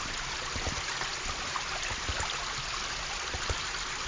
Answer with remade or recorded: recorded